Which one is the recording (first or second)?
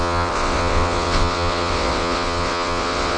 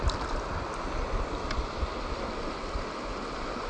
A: second